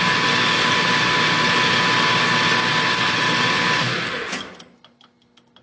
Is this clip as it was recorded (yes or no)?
yes